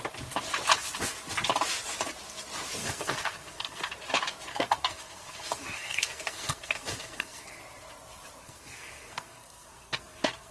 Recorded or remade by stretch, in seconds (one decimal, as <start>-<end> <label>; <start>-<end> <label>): 0.0-2.8 recorded; 2.8-3.9 remade; 3.9-4.5 recorded; 4.5-7.6 remade; 7.6-8.4 recorded; 8.4-10.5 remade